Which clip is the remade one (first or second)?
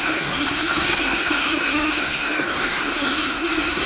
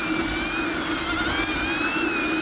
first